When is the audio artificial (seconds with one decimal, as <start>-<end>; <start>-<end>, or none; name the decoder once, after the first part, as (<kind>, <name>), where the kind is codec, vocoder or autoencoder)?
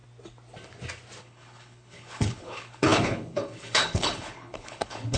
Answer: 1.2-5.2 (codec, HILCodec)